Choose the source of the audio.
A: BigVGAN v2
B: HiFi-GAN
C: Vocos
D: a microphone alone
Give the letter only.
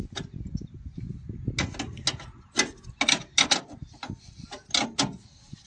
D